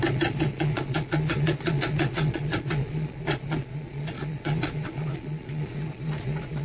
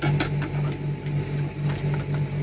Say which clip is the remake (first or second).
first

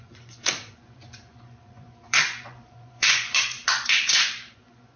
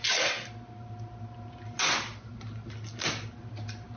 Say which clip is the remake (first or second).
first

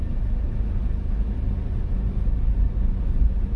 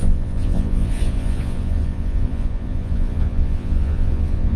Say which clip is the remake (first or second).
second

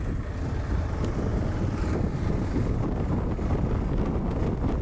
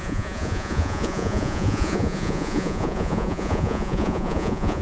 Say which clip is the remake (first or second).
second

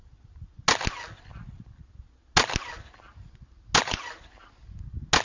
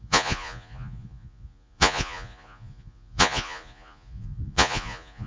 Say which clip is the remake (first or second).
second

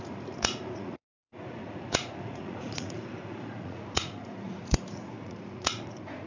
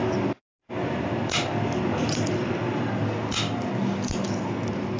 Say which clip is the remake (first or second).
first